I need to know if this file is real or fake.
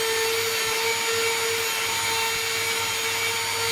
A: real